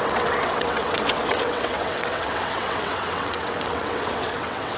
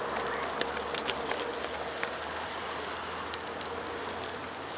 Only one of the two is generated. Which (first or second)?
first